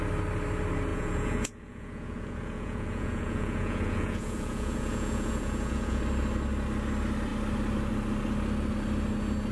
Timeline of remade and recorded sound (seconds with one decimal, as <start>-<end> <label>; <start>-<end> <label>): 0.0-0.9 recorded; 0.9-6.0 remade; 6.0-9.5 recorded